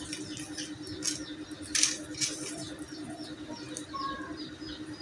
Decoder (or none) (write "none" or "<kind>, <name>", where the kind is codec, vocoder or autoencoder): none